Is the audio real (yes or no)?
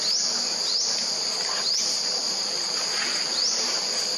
no